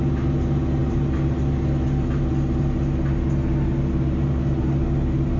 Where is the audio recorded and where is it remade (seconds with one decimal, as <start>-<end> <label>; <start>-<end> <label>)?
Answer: 0.0-5.4 recorded